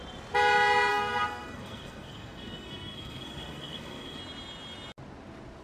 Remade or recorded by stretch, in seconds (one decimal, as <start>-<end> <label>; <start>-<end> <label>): 0.0-0.9 recorded; 0.9-4.2 remade; 4.2-5.6 recorded